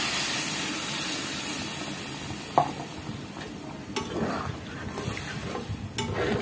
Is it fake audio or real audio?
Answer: real